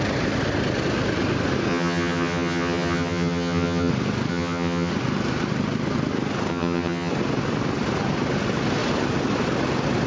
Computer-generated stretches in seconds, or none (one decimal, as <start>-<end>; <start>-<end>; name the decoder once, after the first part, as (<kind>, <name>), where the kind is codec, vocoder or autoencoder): 1.7-3.9 (vocoder, HiFi-GAN); 4.3-4.9; 6.5-7.1